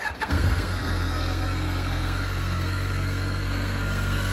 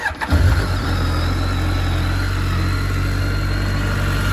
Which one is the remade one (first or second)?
first